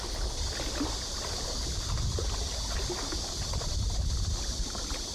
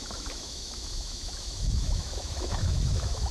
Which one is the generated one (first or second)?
second